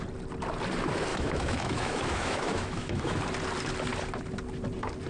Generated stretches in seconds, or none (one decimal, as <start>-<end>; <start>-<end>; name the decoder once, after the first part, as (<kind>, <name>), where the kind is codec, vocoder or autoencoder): 1.1-3.2 (autoencoder, DAC-VAE)